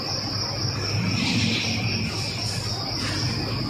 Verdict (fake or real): real